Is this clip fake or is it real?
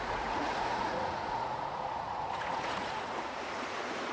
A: fake